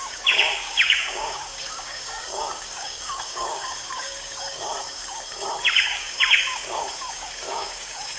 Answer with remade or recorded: remade